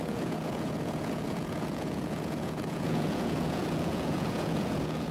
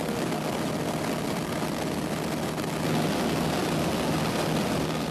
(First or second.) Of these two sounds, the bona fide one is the second